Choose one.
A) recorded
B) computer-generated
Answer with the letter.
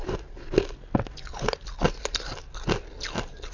A